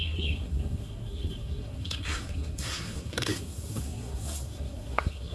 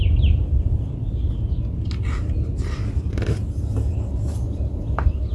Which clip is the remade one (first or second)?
first